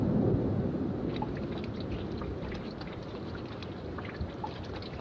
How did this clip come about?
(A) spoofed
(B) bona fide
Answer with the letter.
B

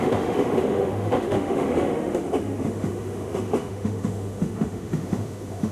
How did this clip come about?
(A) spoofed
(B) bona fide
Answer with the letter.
A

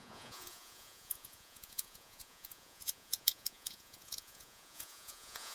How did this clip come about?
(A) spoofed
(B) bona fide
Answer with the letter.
A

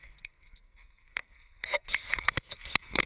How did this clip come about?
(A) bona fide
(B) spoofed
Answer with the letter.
B